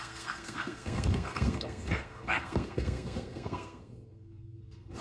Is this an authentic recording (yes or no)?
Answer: no